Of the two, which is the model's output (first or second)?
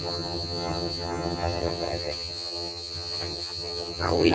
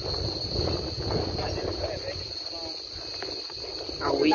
first